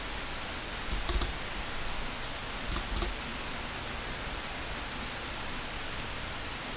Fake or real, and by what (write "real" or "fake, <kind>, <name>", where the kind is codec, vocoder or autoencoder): real